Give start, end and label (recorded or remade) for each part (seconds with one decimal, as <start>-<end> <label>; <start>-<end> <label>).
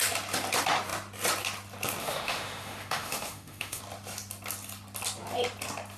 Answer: 0.0-2.0 recorded; 2.0-3.8 remade; 3.8-6.0 recorded